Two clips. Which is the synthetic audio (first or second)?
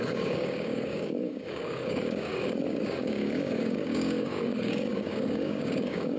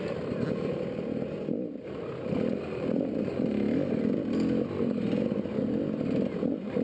first